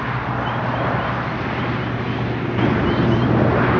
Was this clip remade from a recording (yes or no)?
no